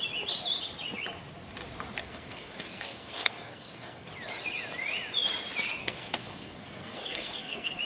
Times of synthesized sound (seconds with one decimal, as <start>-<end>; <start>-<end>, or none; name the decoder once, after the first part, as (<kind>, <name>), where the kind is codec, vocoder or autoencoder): 2.0-4.1 (codec, SNAC); 5.8-7.8